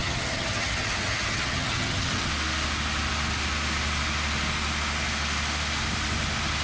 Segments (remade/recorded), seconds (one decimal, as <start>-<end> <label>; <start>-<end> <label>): 0.0-2.3 remade; 2.3-6.6 recorded

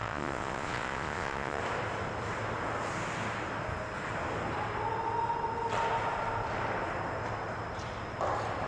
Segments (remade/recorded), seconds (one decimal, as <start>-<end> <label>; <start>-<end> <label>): 0.0-1.6 remade; 1.6-8.7 recorded

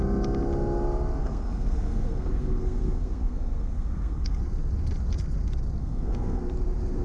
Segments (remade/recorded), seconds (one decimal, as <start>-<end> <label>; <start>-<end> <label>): 0.0-1.2 recorded; 1.2-4.4 remade; 4.4-5.8 recorded; 5.8-6.4 remade; 6.4-7.0 recorded

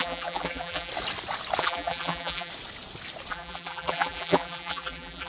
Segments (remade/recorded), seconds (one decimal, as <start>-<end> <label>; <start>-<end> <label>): 0.0-0.9 remade; 0.9-1.6 recorded; 1.6-2.5 remade; 2.5-3.3 recorded; 3.3-5.3 remade

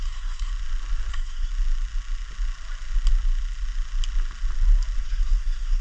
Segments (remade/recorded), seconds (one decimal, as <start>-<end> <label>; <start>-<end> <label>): 0.0-0.5 remade; 0.5-1.1 recorded; 1.1-1.5 remade; 1.5-5.0 recorded; 5.0-5.8 remade